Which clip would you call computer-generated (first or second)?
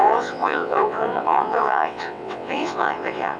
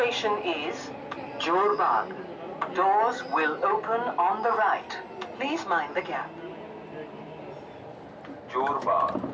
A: first